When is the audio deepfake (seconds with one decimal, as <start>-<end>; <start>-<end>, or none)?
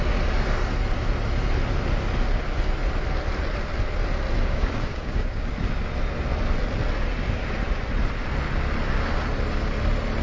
4.4-5.5